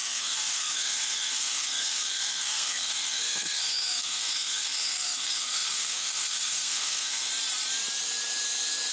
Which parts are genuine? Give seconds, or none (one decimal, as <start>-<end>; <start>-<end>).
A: 7.3-8.9